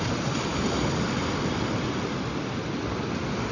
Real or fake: real